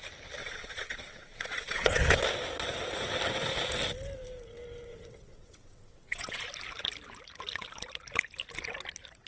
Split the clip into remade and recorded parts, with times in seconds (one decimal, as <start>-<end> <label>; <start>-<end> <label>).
0.0-0.4 recorded; 0.4-2.2 remade; 2.2-4.9 recorded; 4.9-6.4 remade; 6.4-9.3 recorded